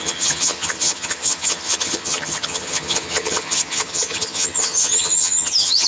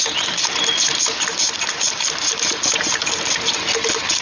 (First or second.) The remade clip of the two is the first